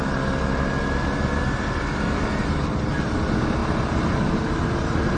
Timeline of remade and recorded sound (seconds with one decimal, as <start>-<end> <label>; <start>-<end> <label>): 0.0-5.2 recorded